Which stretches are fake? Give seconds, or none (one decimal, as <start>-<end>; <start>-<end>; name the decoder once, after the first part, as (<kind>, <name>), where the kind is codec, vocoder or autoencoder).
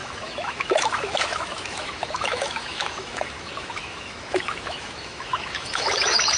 0.0-6.4 (autoencoder, DAC-VAE)